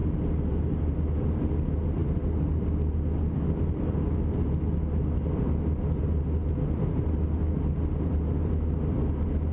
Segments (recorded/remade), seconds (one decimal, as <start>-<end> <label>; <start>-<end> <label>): 0.0-9.5 recorded